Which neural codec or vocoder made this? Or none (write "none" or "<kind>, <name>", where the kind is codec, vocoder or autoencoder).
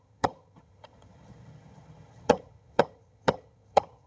vocoder, HiFi-GAN